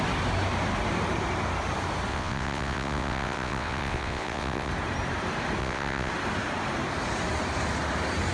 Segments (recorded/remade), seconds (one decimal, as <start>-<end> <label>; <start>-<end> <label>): 0.0-2.1 recorded; 2.1-4.7 remade; 4.7-5.6 recorded; 5.6-6.1 remade; 6.1-8.3 recorded